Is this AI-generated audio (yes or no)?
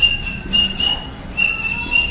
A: yes